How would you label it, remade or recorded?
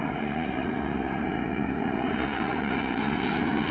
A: remade